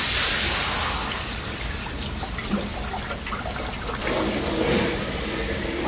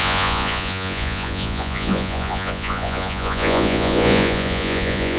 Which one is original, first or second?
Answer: first